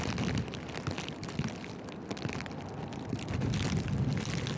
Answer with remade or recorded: recorded